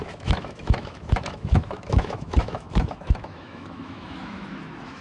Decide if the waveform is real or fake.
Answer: fake